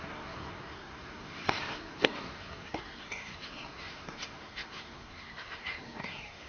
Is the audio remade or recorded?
remade